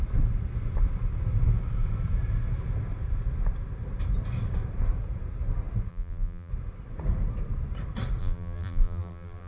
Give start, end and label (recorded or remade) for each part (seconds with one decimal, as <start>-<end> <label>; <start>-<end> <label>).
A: 0.0-5.9 recorded; 5.9-6.5 remade; 6.5-8.2 recorded; 8.2-9.5 remade

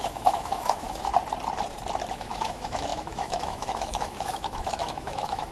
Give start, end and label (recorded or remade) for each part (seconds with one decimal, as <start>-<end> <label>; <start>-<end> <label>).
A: 0.0-1.1 remade; 1.1-2.1 recorded; 2.1-5.5 remade

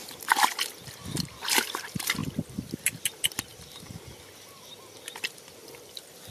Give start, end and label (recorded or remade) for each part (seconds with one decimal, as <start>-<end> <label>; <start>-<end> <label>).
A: 0.0-2.2 recorded; 2.2-2.8 remade; 2.8-5.6 recorded; 5.6-6.3 remade

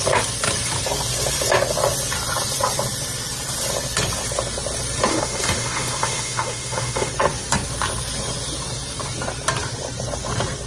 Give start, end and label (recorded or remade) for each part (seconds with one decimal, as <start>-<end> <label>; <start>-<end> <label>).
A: 0.0-5.1 recorded; 5.1-7.1 remade; 7.1-10.7 recorded

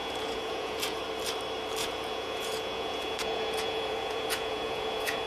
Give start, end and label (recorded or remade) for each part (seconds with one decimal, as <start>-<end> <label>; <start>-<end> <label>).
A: 0.0-1.0 remade; 1.0-1.8 recorded; 1.8-5.3 remade

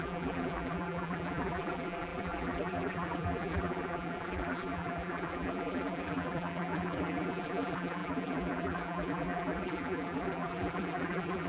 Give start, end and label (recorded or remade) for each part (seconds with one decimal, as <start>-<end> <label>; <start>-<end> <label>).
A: 0.0-11.5 remade

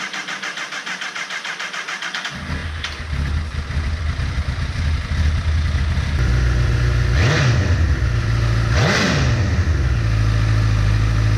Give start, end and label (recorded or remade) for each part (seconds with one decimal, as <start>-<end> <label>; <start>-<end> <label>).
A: 0.0-11.4 recorded

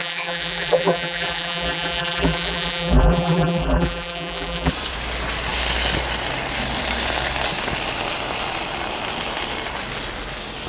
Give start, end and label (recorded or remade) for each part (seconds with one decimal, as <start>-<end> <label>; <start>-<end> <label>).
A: 0.0-4.7 remade; 4.7-10.7 recorded